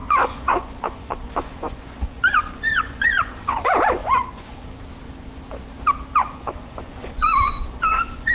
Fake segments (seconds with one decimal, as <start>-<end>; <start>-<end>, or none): 0.0-4.8; 6.2-8.3